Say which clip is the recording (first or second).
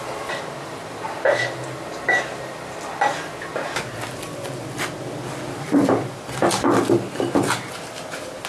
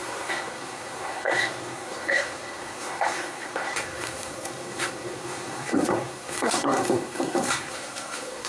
first